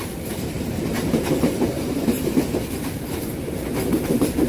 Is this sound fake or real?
fake